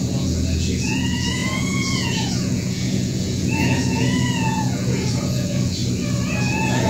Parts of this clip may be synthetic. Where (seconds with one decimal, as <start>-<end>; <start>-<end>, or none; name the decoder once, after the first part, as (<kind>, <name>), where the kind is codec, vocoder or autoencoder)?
0.0-5.8 (vocoder, Vocos); 6.4-6.9